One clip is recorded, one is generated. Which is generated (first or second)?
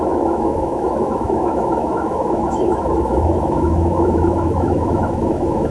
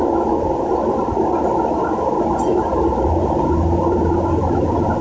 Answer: first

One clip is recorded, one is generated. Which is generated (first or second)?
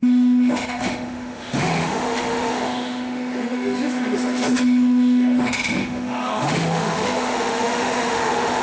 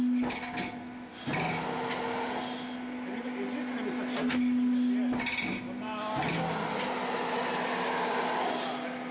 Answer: first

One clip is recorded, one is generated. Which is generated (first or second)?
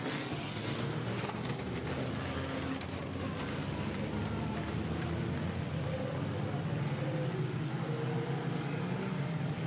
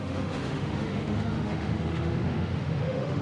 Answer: second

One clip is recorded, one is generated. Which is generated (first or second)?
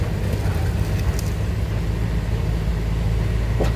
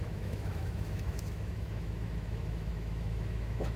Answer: second